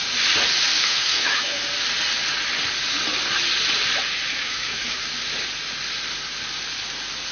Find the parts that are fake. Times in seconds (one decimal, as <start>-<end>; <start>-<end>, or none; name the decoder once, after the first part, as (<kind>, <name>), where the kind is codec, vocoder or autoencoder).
0.8-1.6 (autoencoder, DAC-VAE); 4.3-5.0